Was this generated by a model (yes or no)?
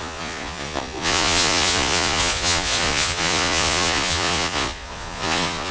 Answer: yes